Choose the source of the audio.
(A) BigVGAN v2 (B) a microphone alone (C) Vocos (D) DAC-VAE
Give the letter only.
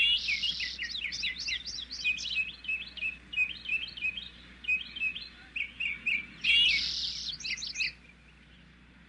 B